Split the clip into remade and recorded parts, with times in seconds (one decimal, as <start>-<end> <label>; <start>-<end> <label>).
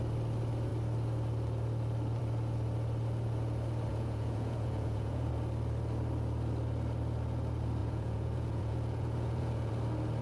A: 0.0-3.9 recorded; 3.9-5.3 remade; 5.3-7.8 recorded; 7.8-9.7 remade; 9.7-10.2 recorded